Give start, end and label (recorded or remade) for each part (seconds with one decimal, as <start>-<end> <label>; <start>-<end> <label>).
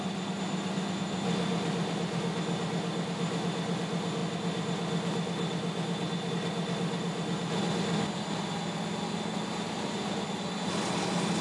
0.0-11.4 recorded